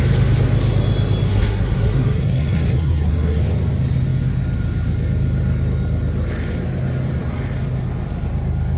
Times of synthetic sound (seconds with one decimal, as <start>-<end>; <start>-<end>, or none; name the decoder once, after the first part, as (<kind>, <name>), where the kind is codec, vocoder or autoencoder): 1.3-3.4 (codec, SNAC)